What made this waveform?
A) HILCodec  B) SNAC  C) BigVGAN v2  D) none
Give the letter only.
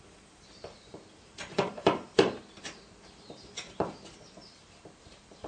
C